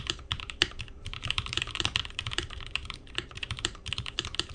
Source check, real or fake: fake